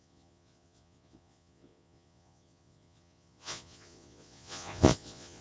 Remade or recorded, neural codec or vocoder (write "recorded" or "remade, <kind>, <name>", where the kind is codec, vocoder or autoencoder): remade, vocoder, Vocos